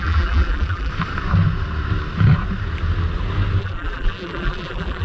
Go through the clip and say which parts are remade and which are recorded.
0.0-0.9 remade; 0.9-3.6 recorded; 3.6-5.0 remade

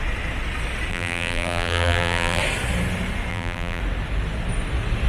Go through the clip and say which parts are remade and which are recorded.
0.0-0.9 recorded; 0.9-2.4 remade; 2.4-3.3 recorded; 3.3-3.8 remade; 3.8-5.1 recorded

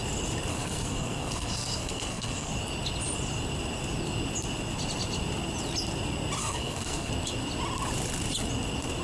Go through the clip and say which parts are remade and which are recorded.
0.0-0.5 recorded; 0.5-2.5 remade; 2.5-6.4 recorded; 6.4-7.1 remade; 7.1-9.0 recorded

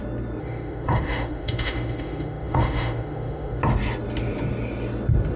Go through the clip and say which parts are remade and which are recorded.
0.0-0.4 recorded; 0.4-3.6 remade; 3.6-5.4 recorded